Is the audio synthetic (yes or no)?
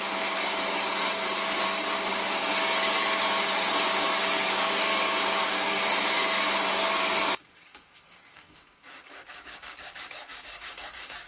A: yes